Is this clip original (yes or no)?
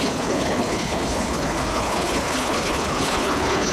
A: no